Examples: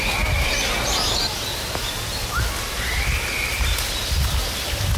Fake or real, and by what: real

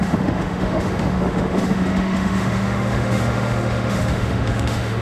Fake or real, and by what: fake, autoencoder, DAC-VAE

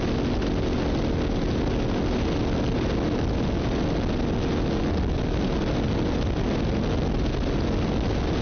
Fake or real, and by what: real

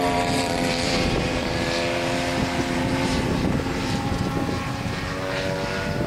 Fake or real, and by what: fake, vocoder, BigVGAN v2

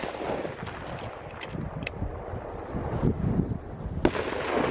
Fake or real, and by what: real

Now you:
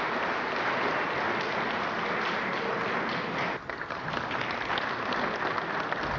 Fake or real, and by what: real